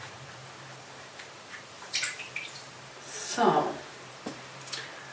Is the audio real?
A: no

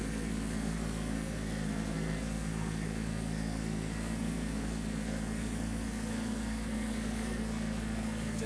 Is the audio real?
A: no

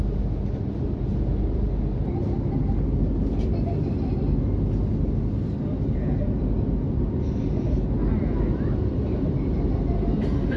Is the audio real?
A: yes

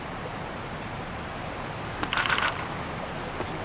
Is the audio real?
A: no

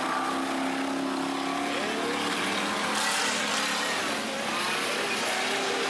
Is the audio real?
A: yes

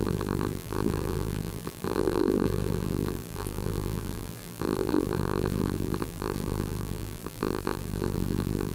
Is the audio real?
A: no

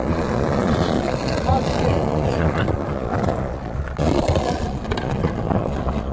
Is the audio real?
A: no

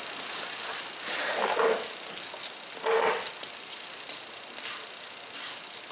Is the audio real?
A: yes